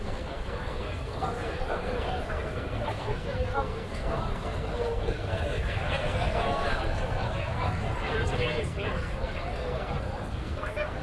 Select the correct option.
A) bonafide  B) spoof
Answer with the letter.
B